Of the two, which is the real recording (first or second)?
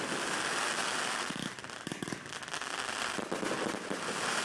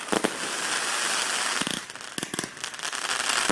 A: second